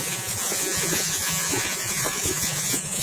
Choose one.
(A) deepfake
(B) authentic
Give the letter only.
A